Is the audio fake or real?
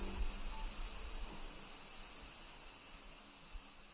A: real